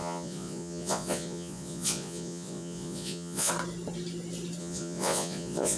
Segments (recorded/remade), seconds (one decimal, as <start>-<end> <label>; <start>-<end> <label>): 0.0-3.5 remade; 3.5-4.6 recorded; 4.6-5.8 remade